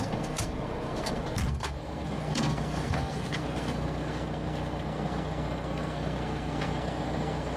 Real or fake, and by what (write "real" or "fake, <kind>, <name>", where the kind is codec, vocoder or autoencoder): fake, codec, SNAC